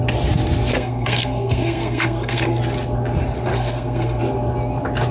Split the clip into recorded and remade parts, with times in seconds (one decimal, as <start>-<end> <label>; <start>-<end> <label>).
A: 0.0-0.7 recorded; 0.7-2.6 remade; 2.6-3.5 recorded; 3.5-4.2 remade; 4.2-5.1 recorded